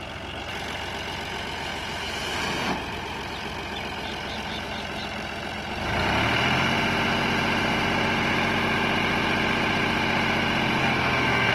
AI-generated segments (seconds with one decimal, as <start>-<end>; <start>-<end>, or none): 10.8-11.5